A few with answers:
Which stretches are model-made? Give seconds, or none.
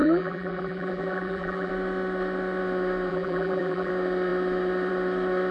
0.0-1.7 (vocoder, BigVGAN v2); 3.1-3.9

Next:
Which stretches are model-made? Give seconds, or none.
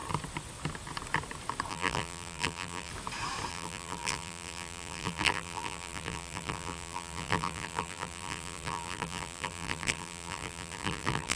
1.7-2.9 (vocoder, BigVGAN v2); 3.5-11.4